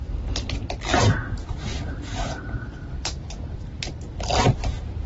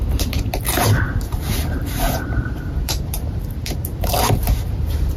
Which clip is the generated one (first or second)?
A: second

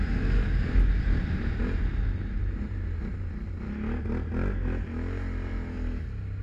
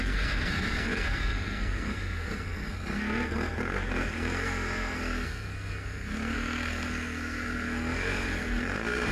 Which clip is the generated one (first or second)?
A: second